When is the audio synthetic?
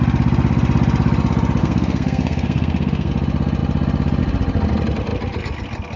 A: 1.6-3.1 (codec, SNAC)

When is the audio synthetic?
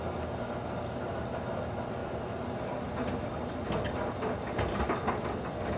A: none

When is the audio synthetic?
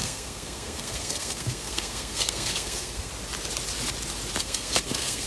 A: 0.0-3.1 (codec, SNAC); 4.4-5.3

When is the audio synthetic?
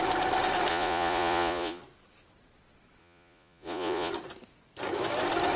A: 0.7-1.8 (vocoder, Vocos); 3.0-4.1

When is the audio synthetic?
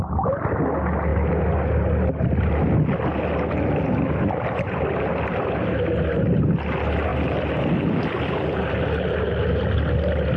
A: none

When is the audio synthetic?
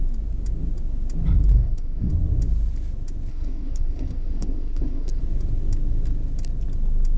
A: 1.5-2.1 (codec, SNAC); 3.3-5.2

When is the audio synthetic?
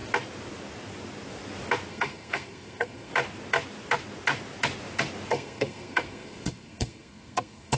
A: 1.9-3.1 (codec, SNAC); 5.3-7.8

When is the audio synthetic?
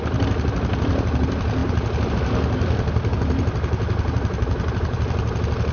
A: none